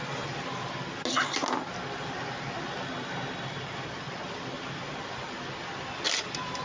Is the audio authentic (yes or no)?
yes